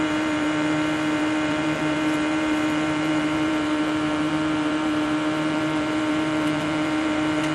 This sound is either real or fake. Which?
fake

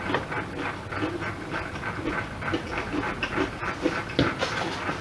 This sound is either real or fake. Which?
real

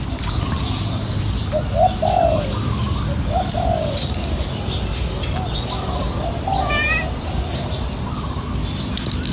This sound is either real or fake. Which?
real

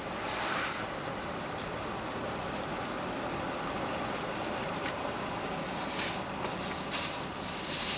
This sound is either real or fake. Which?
real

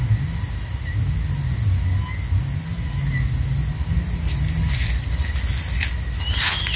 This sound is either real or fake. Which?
real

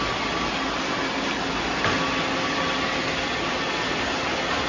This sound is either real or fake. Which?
real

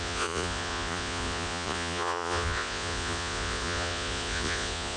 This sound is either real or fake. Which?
fake